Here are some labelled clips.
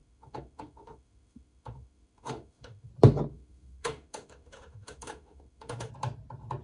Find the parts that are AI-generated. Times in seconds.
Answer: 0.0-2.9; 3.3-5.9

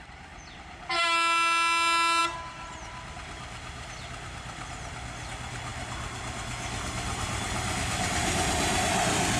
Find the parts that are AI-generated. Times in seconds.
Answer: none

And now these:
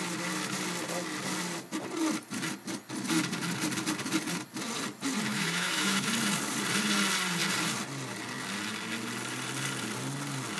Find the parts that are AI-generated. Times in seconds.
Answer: 5.3-6.1